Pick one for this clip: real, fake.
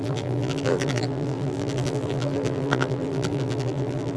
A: fake